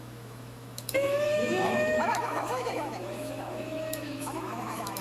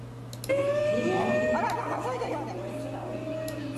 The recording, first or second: second